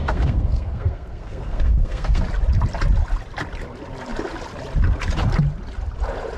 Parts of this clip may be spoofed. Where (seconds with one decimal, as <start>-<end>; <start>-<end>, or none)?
0.0-2.2